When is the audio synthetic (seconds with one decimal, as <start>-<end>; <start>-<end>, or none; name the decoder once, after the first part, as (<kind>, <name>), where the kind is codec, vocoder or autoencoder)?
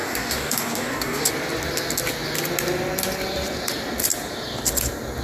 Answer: 0.0-1.3 (codec, DAC)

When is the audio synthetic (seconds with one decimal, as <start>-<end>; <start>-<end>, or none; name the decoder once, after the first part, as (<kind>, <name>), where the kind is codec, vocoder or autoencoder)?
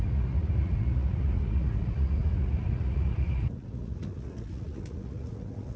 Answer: 0.0-5.8 (vocoder, Vocos)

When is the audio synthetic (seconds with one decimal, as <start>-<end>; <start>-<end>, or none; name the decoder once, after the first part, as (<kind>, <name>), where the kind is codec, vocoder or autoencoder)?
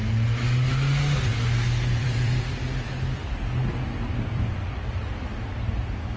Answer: 2.0-5.7 (vocoder, BigVGAN v2)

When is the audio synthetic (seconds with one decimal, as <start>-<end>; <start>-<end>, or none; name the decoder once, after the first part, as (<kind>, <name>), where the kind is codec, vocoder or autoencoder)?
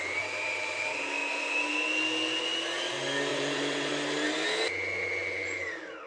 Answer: 3.3-3.9 (vocoder, Vocos)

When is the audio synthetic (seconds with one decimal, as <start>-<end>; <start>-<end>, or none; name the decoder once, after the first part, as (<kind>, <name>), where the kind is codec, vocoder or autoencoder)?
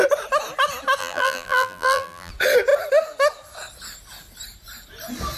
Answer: 1.0-2.3 (vocoder, BigVGAN v2)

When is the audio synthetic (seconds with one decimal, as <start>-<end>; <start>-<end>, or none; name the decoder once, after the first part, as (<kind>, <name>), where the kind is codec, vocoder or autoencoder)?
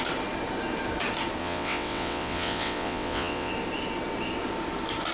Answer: 1.4-3.5 (vocoder, WaveNeXt)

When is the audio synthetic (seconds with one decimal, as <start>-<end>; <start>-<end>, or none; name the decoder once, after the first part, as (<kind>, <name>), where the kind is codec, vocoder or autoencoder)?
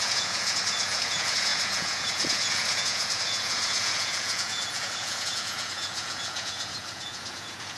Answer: 0.0-7.8 (vocoder, Vocos)